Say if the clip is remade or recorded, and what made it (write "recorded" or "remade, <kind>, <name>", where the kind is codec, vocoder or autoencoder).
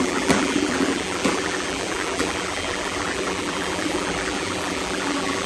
remade, vocoder, BigVGAN v2